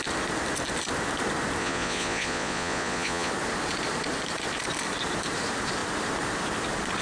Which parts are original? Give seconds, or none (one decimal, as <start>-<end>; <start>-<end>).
0.0-1.6; 3.3-7.0